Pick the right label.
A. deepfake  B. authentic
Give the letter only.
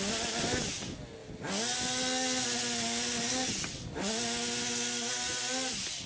B